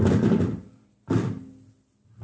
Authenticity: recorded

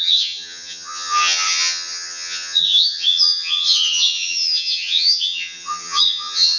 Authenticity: remade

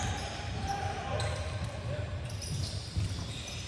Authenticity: recorded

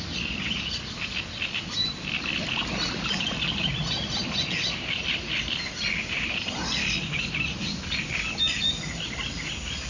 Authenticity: remade